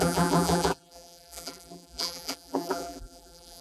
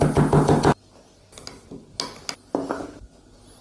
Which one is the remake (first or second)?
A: first